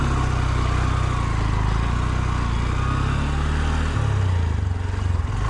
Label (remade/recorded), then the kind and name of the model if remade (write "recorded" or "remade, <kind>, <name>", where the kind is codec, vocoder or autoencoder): recorded